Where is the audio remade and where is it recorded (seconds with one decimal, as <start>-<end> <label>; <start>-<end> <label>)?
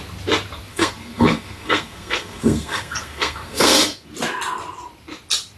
0.0-0.7 recorded; 0.7-4.1 remade; 4.1-5.6 recorded